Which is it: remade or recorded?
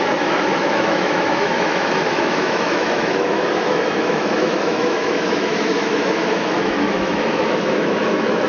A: remade